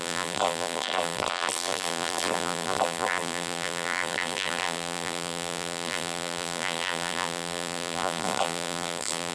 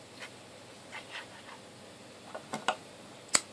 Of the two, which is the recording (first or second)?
second